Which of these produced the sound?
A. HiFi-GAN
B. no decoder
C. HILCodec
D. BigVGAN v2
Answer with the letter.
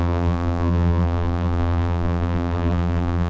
D